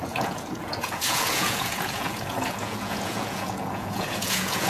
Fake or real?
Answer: fake